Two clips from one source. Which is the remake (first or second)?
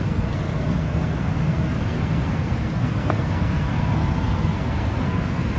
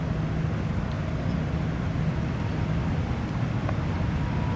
first